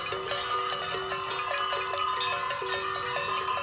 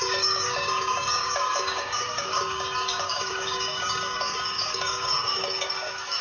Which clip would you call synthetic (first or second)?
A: second